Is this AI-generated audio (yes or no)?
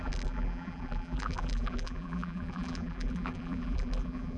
yes